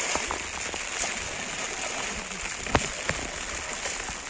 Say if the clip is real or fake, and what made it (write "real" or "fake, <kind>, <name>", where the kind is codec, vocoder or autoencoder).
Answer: real